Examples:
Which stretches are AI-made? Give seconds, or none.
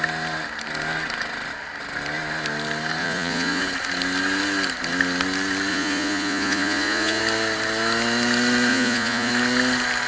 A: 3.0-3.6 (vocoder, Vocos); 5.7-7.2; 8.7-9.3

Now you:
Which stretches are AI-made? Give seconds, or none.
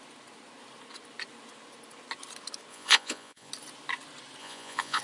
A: 2.7-3.5 (vocoder, Vocos); 4.4-5.0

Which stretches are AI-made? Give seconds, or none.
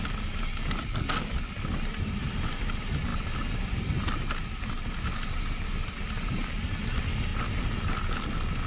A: none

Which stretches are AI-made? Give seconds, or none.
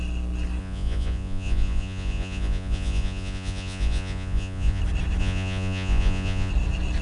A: 0.6-4.8 (vocoder, Vocos); 5.2-6.5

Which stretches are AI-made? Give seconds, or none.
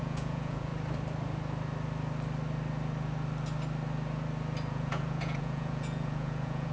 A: 0.0-0.7 (vocoder, Vocos); 4.7-6.7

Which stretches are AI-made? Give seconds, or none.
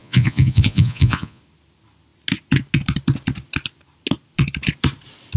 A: 0.0-1.4 (vocoder, Vocos)